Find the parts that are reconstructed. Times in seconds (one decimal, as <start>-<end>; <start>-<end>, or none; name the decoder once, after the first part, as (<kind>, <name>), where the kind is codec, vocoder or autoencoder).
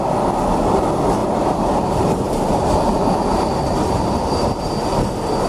1.2-4.5 (vocoder, BigVGAN v2)